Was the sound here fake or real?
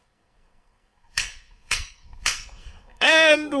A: fake